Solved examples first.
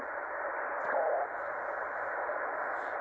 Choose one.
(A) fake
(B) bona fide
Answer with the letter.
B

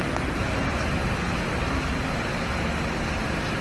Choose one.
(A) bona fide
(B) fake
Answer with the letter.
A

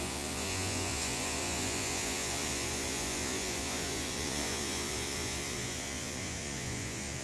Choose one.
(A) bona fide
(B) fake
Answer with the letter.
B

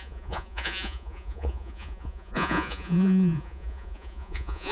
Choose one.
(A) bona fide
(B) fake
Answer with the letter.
B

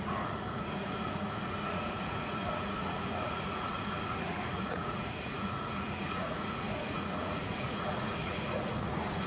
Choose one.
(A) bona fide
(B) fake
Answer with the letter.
B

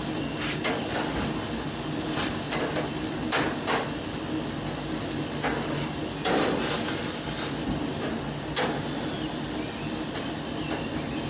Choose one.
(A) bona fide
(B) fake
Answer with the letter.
A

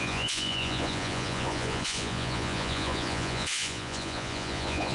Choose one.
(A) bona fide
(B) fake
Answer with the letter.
B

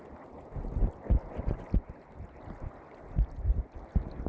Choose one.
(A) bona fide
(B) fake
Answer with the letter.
A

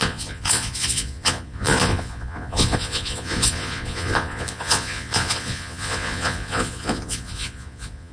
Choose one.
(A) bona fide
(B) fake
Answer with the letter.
B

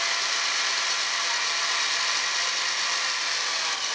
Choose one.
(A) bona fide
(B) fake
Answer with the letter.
A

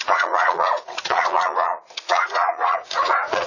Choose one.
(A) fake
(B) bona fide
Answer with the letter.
A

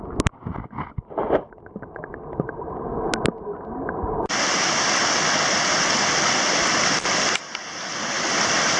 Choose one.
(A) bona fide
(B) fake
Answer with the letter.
A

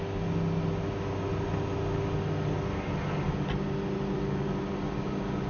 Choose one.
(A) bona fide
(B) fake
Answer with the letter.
A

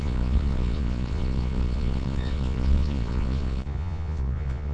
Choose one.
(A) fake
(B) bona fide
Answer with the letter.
A